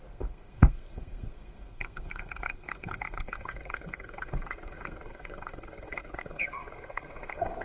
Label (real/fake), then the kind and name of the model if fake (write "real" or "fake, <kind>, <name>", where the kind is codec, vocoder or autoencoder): fake, codec, SNAC